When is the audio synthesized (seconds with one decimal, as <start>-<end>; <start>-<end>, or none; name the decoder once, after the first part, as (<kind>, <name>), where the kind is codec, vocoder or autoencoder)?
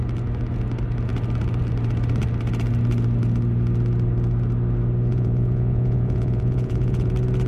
5.1-7.1 (vocoder, Vocos)